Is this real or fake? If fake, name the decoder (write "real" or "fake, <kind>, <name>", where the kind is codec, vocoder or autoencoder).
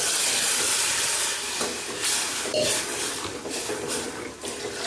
fake, vocoder, BigVGAN v2